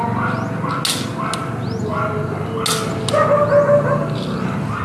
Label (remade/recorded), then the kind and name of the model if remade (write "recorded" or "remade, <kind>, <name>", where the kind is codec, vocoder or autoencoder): recorded